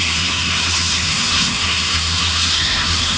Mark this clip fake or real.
fake